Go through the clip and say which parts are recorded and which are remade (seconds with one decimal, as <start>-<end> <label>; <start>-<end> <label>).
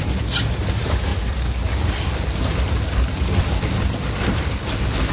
0.0-5.1 recorded